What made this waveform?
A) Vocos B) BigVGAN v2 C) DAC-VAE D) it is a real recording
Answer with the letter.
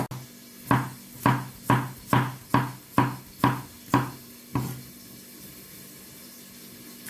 D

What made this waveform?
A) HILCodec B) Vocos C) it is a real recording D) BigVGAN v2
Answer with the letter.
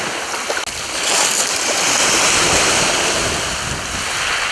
C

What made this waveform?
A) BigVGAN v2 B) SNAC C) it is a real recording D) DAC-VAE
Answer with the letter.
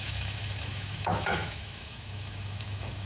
D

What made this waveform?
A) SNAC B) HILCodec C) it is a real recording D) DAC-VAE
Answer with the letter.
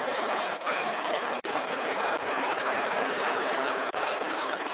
B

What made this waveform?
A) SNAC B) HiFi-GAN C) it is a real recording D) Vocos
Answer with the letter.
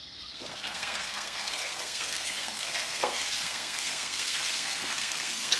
A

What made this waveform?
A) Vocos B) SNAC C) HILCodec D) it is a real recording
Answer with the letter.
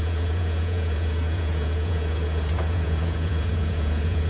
A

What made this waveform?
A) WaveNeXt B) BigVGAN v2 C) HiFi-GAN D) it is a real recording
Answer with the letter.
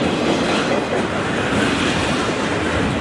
D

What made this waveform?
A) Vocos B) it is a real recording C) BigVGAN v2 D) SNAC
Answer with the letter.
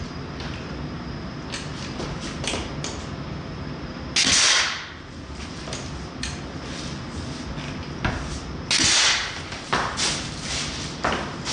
B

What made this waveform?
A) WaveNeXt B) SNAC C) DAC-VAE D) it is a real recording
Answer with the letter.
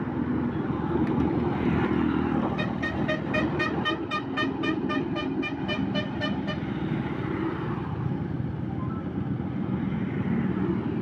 D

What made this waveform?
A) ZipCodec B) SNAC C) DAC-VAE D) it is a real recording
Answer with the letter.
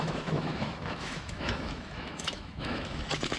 C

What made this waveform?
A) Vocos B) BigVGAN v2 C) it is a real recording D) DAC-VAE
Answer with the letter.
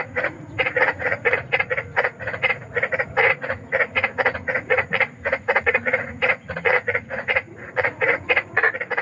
A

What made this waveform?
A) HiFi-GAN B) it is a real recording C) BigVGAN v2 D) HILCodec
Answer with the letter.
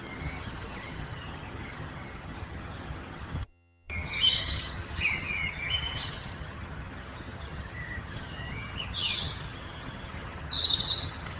A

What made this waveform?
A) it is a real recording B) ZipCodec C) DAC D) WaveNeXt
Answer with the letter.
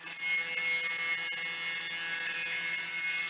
A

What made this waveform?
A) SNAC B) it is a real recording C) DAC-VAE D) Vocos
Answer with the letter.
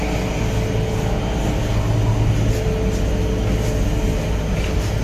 B